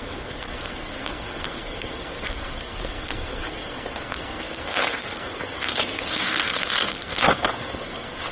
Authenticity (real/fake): fake